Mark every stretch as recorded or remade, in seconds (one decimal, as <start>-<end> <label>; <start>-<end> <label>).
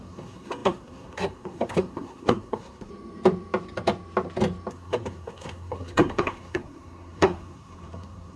0.0-2.9 remade; 2.9-4.7 recorded; 4.7-8.4 remade